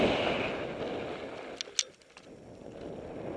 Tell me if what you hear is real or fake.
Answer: real